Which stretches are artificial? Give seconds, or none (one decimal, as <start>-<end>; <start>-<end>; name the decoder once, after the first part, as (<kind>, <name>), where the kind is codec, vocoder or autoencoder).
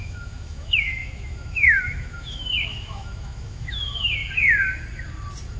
0.0-4.2 (autoencoder, DAC-VAE)